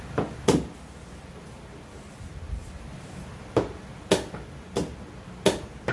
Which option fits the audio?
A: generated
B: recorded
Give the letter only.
B